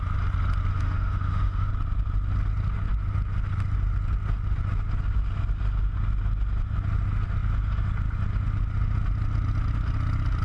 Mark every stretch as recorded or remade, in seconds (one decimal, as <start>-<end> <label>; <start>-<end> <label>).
0.0-0.7 recorded; 0.7-1.7 remade; 1.7-10.4 recorded